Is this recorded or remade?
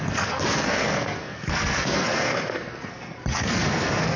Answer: remade